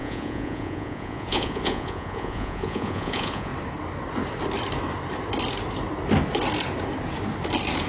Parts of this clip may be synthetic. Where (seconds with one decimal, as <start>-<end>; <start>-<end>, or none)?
0.0-3.5